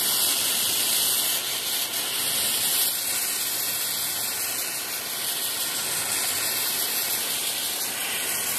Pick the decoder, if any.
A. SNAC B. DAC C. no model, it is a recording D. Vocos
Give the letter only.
C